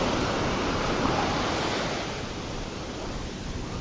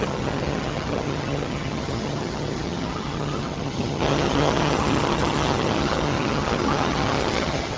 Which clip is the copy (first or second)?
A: second